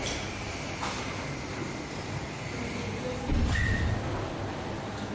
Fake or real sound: real